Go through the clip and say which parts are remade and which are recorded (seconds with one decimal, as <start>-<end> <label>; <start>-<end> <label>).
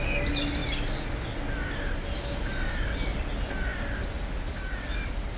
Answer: 0.0-5.4 recorded